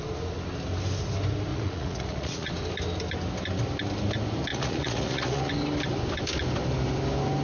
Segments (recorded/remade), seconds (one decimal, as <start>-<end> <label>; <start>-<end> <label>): 0.0-1.5 recorded; 1.5-2.5 remade; 2.5-4.5 recorded; 4.5-5.5 remade; 5.5-7.4 recorded